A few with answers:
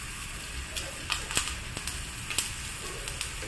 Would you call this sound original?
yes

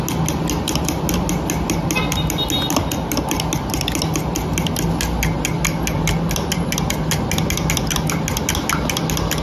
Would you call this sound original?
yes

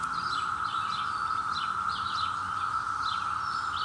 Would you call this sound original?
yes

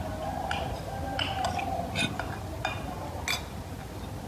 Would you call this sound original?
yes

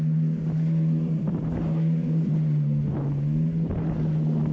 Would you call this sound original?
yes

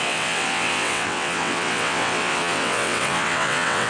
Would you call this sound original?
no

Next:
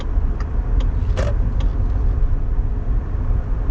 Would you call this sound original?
yes